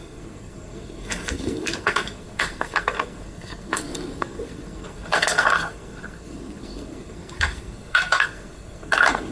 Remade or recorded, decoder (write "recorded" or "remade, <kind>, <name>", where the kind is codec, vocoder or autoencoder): remade, codec, SNAC